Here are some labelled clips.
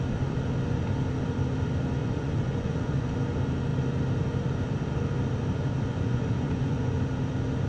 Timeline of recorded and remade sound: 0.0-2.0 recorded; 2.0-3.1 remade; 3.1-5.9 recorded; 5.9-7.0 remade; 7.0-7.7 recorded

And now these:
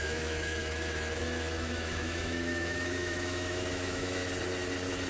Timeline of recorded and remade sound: 0.0-4.2 remade; 4.2-5.1 recorded

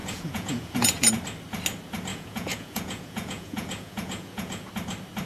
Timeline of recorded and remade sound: 0.0-1.1 remade; 1.1-2.1 recorded; 2.1-4.7 remade; 4.7-5.3 recorded

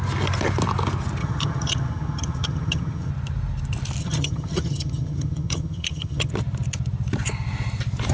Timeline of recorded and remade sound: 0.0-1.2 recorded; 1.2-3.1 remade; 3.1-4.0 recorded; 4.0-6.3 remade; 6.3-8.1 recorded

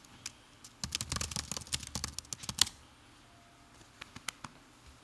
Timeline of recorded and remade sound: 0.0-5.0 recorded

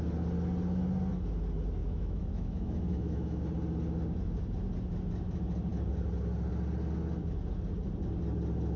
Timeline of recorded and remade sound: 0.0-1.8 recorded; 1.8-3.4 remade; 3.4-8.8 recorded

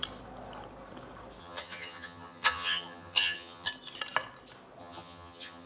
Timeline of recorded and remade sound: 0.0-1.4 recorded; 1.4-3.7 remade; 3.7-4.8 recorded; 4.8-5.7 remade